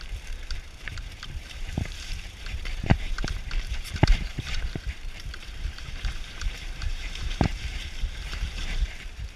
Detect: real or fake fake